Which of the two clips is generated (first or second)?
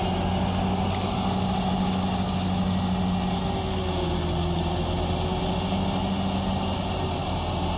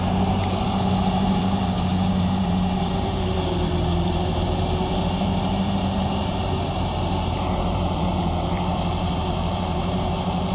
second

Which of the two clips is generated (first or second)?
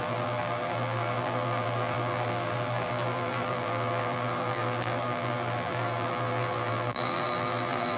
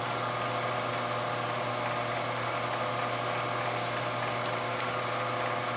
first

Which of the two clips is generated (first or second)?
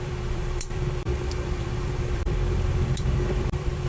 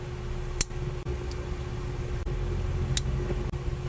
first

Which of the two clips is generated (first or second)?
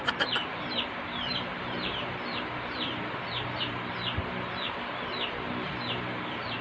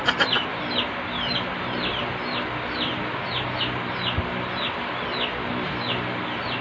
first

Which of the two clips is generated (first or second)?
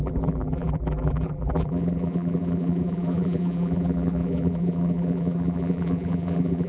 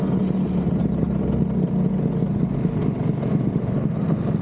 first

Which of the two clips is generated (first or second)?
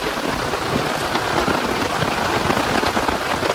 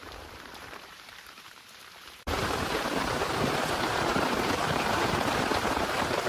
second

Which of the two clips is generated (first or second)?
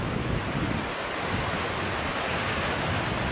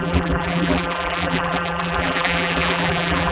second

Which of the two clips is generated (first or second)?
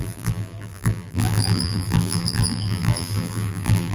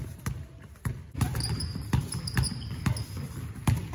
first